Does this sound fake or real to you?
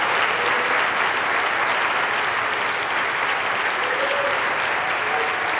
real